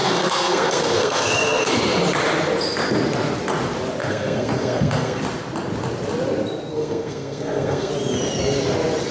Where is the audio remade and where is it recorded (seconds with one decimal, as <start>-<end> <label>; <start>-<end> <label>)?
0.0-1.7 remade; 1.7-4.0 recorded; 4.0-5.2 remade; 5.2-6.7 recorded; 6.7-7.9 remade; 7.9-9.1 recorded